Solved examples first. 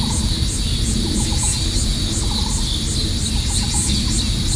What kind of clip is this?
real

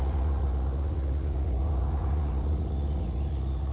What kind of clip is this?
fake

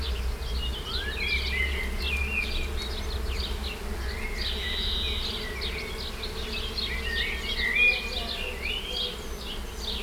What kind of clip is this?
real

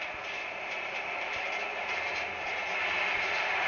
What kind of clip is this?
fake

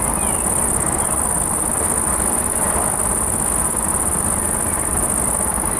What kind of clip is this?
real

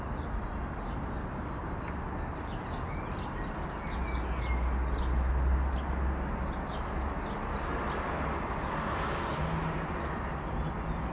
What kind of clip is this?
real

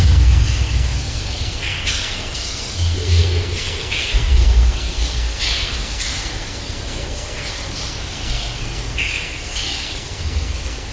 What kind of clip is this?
fake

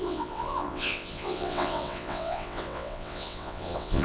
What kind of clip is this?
fake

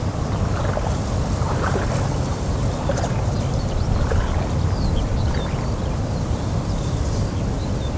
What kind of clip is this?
real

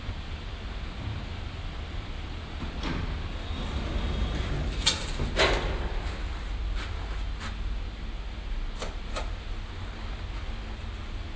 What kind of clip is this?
real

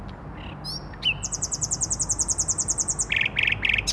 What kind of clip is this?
real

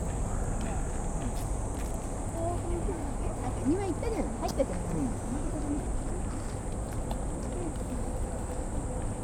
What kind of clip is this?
real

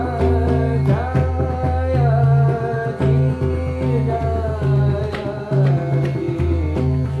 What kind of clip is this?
real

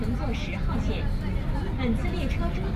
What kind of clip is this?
real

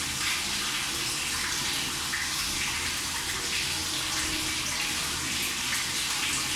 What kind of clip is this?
real